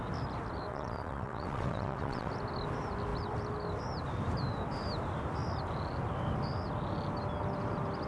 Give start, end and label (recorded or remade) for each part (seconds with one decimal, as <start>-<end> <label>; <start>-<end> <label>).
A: 0.0-0.7 recorded; 0.7-2.3 remade; 2.3-8.1 recorded